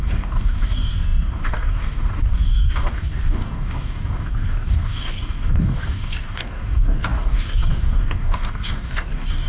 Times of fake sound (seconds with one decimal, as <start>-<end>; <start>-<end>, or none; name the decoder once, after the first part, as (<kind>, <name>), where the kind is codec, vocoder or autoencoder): 0.0-9.5 (codec, DAC)